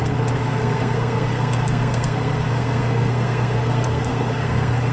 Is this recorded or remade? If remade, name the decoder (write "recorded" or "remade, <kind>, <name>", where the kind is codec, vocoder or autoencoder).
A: remade, codec, SNAC